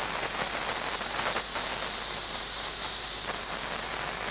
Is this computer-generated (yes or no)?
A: no